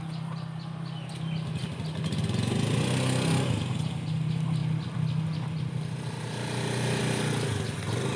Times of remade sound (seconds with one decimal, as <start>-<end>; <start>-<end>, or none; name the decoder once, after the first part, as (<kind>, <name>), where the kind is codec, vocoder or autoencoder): none